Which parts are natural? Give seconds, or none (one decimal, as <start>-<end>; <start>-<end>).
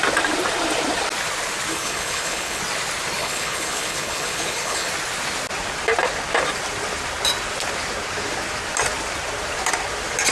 0.0-1.7; 2.6-3.2; 4.9-10.3